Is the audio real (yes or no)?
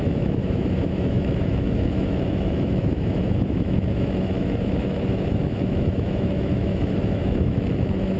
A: no